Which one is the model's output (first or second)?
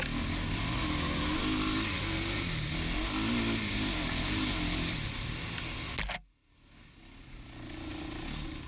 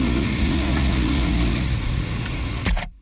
second